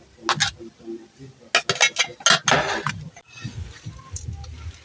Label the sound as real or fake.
real